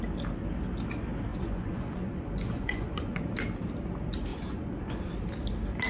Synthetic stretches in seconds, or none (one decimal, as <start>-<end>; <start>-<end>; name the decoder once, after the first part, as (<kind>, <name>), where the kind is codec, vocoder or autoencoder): 1.3-3.2 (vocoder, Vocos); 4.3-5.1